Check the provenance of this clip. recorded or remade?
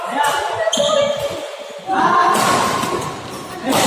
recorded